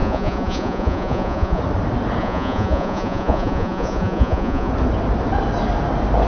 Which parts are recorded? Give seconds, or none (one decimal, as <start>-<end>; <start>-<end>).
1.6-2.2; 4.7-6.3